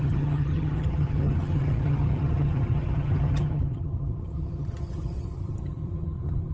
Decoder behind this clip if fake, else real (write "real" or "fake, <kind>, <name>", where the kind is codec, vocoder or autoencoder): fake, vocoder, HiFi-GAN